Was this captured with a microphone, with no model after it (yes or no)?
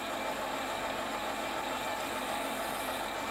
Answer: yes